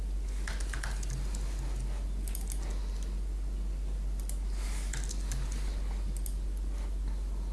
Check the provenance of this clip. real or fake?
real